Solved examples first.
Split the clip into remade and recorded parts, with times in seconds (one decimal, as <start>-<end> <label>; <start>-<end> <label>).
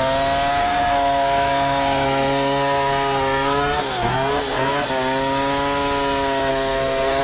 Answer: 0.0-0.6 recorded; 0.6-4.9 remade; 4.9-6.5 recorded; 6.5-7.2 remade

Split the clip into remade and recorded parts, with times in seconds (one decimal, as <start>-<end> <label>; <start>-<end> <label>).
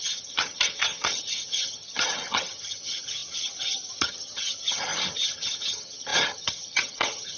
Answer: 0.0-7.4 remade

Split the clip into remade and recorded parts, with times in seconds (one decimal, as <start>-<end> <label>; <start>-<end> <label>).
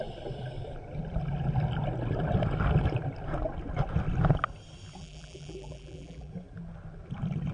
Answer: 0.0-5.0 recorded; 5.0-6.3 remade; 6.3-7.5 recorded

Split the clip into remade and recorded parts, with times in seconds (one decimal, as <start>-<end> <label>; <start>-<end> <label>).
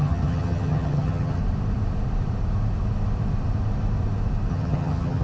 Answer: 0.0-1.4 remade; 1.4-4.5 recorded; 4.5-5.2 remade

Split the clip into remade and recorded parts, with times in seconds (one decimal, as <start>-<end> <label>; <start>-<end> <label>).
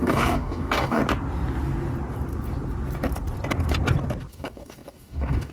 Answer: 0.0-1.0 remade; 1.0-4.3 recorded; 4.3-5.5 remade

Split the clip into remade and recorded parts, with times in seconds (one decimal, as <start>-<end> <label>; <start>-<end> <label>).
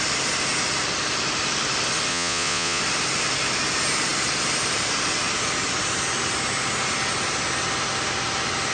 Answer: 0.0-2.1 recorded; 2.1-2.8 remade; 2.8-8.7 recorded